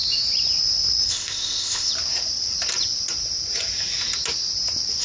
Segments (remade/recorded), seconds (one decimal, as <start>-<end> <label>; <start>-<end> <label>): 0.0-1.1 recorded; 1.1-1.9 remade; 1.9-5.0 recorded